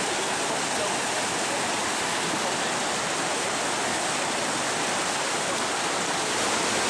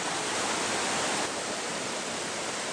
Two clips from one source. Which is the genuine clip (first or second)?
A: first